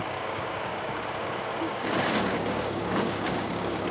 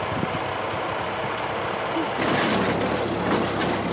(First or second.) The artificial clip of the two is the first